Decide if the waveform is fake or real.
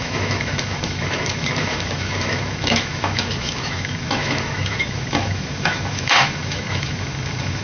fake